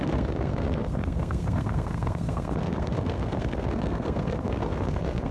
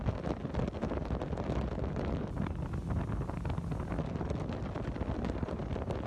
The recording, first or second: second